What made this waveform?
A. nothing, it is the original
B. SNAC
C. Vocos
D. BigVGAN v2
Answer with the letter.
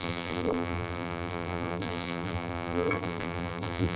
D